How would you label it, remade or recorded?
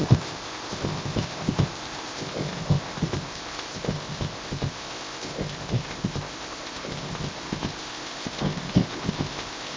remade